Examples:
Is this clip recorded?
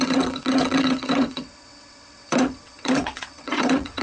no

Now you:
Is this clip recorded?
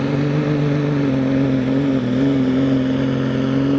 yes